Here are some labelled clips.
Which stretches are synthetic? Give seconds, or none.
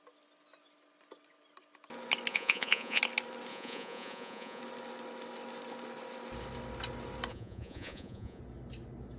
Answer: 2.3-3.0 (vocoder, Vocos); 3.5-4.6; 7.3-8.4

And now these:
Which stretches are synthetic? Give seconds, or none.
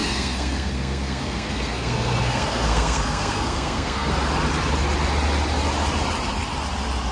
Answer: 0.0-4.1 (codec, SNAC)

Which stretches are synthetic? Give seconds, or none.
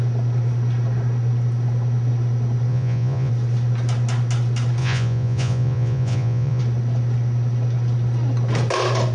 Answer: 2.7-3.3 (vocoder, Vocos); 4.8-6.6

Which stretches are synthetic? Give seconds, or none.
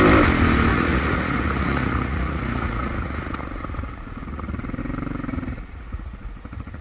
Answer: 0.7-4.8 (vocoder, Vocos); 5.3-6.8